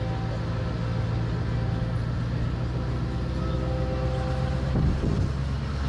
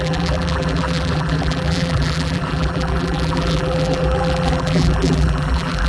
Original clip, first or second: first